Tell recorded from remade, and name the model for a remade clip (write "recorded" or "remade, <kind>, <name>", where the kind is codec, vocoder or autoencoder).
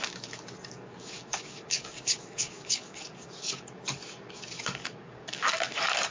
remade, codec, DAC